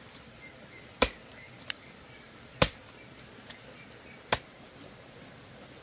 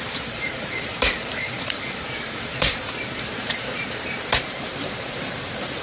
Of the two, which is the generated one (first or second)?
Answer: second